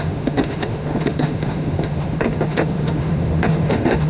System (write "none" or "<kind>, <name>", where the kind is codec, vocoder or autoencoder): autoencoder, DAC-VAE